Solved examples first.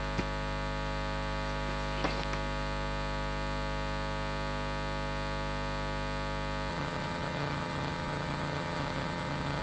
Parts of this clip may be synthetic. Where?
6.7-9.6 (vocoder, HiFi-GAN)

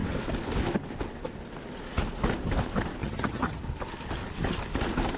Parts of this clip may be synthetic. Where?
3.0-3.6 (vocoder, HiFi-GAN)

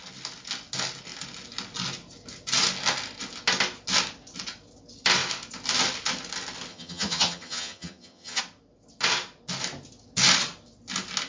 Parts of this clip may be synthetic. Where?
6.7-8.4 (vocoder, HiFi-GAN)

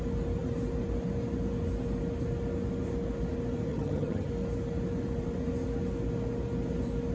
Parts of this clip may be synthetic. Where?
3.7-4.3 (vocoder, HiFi-GAN)

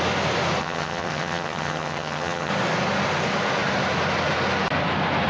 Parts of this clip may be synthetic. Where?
0.6-2.5 (vocoder, HiFi-GAN)

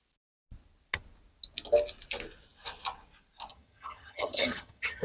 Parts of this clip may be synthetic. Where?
3.5-5.0 (vocoder, HiFi-GAN)

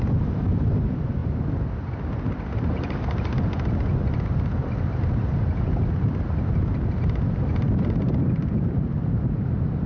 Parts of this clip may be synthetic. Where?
none

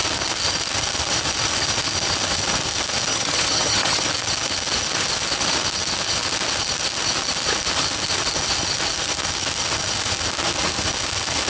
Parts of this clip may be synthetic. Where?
3.1-4.0 (vocoder, HiFi-GAN)